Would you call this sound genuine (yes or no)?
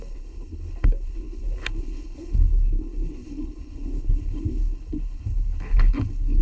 no